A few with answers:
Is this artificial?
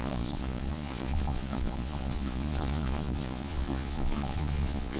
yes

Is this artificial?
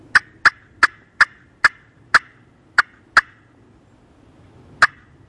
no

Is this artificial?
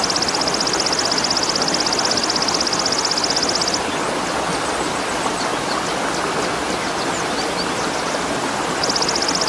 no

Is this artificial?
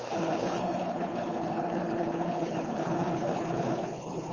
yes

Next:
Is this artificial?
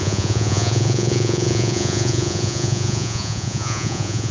yes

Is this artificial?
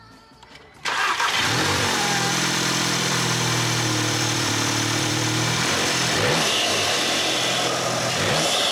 yes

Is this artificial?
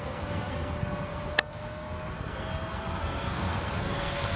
yes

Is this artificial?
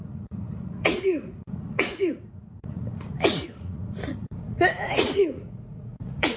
yes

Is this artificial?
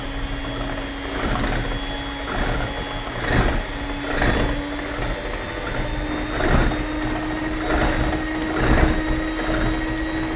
no